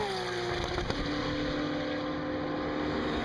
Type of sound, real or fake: real